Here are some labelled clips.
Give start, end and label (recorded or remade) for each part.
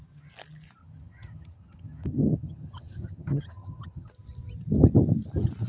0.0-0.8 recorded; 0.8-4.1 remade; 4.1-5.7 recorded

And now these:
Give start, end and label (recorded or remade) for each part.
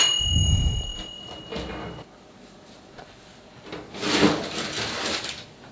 0.0-5.7 recorded